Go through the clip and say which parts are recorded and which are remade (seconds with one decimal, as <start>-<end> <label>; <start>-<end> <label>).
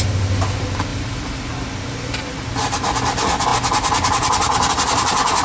0.0-0.9 recorded; 0.9-1.5 remade; 1.5-5.4 recorded